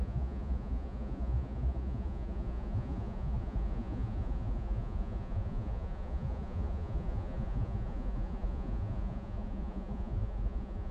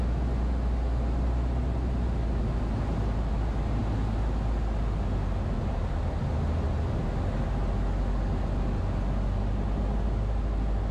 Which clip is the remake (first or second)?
first